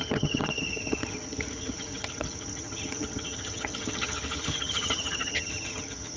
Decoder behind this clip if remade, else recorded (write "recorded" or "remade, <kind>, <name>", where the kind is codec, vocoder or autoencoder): remade, vocoder, HiFi-GAN